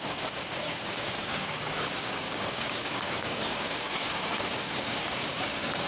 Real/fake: fake